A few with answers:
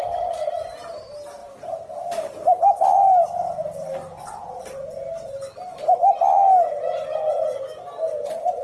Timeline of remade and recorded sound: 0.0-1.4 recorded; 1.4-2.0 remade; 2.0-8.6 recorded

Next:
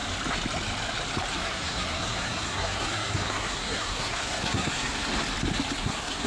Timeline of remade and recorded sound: 0.0-1.3 recorded; 1.3-5.1 remade; 5.1-5.8 recorded; 5.8-6.3 remade

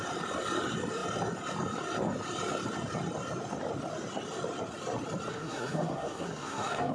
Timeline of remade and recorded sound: 0.0-5.3 recorded; 5.3-6.9 remade

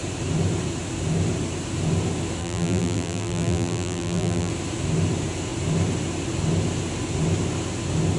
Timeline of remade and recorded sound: 0.0-2.4 recorded; 2.4-4.5 remade; 4.5-8.2 recorded

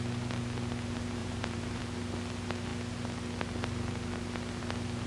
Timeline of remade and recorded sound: 0.0-1.2 recorded; 1.2-1.8 remade; 1.8-5.1 recorded

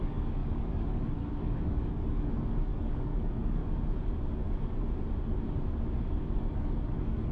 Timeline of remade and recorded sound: 0.0-3.6 remade; 3.6-6.4 recorded; 6.4-7.3 remade

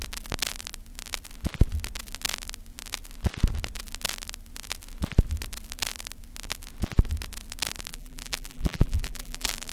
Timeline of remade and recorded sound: 0.0-7.9 recorded; 7.9-9.7 remade